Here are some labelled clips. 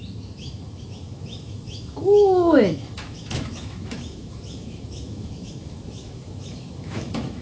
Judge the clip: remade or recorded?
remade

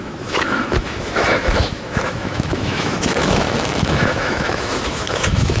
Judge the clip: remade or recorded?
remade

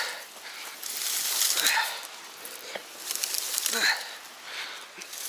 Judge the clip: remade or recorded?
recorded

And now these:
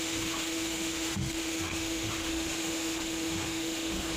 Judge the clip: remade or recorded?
remade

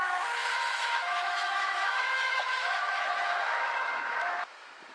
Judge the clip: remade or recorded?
remade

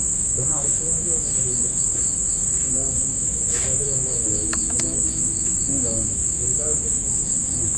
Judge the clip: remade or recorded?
remade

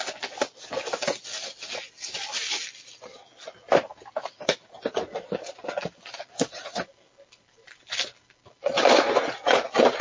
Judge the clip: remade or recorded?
recorded